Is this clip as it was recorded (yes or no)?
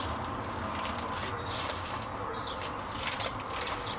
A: yes